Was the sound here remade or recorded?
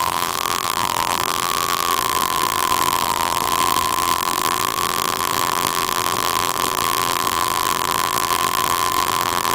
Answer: remade